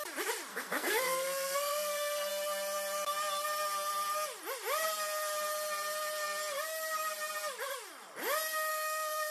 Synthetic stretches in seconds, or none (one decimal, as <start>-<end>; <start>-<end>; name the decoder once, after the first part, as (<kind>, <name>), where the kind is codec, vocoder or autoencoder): 0.5-2.3 (codec, SNAC); 8.7-9.3